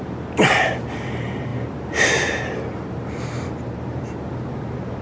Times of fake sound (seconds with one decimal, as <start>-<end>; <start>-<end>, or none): 0.0-5.0